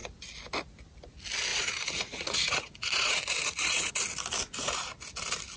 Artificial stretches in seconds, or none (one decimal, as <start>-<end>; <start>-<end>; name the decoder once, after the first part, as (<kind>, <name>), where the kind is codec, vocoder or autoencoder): 1.5-3.9 (vocoder, Vocos)